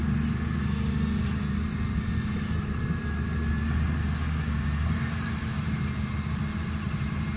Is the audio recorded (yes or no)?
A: yes